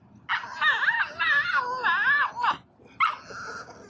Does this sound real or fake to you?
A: real